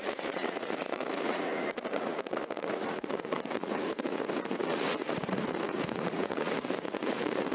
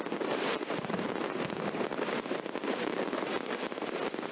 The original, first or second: second